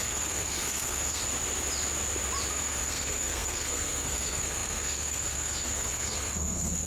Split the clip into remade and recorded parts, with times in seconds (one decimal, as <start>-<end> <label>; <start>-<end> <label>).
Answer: 0.0-1.2 remade; 1.2-2.5 recorded; 2.5-6.9 remade